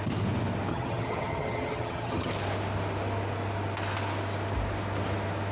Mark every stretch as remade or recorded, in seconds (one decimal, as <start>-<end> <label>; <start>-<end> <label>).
0.0-0.7 recorded; 0.7-2.3 remade; 2.3-5.5 recorded